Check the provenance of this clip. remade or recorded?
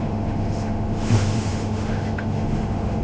remade